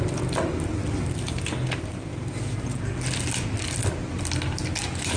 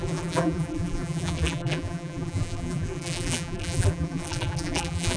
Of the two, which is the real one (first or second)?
first